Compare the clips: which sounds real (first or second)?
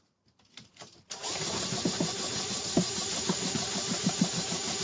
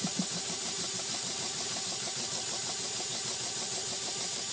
second